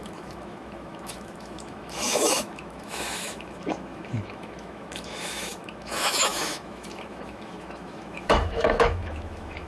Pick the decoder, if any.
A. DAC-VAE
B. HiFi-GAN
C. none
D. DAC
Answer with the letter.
A